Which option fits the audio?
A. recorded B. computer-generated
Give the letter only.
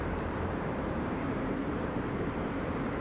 B